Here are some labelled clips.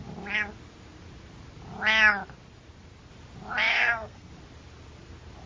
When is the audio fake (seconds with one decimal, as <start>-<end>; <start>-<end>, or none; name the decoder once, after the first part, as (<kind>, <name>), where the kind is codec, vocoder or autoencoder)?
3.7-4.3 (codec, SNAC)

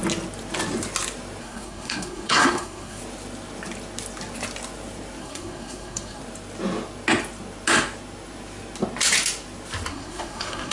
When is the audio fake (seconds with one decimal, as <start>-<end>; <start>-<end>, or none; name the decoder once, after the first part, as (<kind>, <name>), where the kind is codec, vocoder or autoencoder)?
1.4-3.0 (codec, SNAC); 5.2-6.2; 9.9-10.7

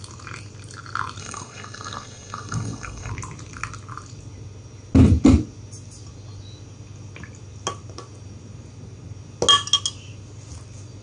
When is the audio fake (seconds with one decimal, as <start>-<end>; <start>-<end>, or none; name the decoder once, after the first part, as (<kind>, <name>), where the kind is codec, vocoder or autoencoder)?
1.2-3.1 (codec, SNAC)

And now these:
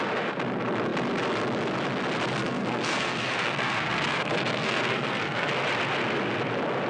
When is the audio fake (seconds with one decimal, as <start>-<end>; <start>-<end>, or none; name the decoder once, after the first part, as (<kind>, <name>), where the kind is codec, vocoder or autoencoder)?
2.4-5.5 (codec, SNAC)

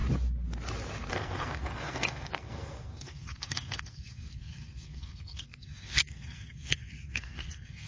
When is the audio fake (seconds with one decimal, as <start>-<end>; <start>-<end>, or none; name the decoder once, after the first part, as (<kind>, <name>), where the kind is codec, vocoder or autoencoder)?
1.1-7.9 (codec, SNAC)

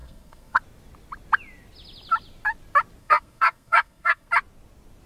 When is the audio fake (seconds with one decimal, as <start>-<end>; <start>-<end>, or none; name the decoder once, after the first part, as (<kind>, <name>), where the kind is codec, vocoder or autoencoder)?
0.0-0.6 (codec, SNAC); 3.0-4.3

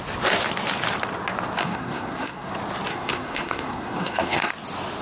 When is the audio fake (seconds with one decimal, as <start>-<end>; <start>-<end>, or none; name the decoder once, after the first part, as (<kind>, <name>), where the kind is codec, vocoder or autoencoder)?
1.6-2.5 (codec, SNAC); 2.9-4.5